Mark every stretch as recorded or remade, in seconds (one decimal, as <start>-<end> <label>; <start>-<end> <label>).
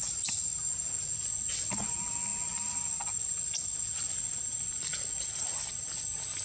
0.0-6.4 recorded